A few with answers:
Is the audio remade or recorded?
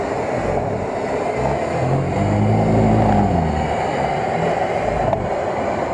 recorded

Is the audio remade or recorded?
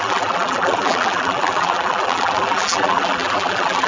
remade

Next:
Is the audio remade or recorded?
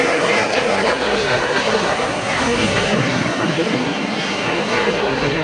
remade